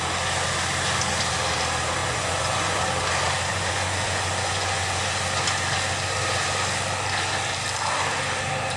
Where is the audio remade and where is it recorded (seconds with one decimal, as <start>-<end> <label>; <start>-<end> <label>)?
0.0-2.0 recorded; 2.0-2.8 remade; 2.8-3.5 recorded; 3.5-5.0 remade; 5.0-8.8 recorded